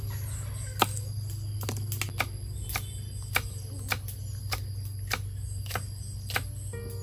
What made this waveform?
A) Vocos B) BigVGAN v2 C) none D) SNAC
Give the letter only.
C